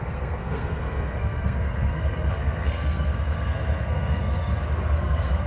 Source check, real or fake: fake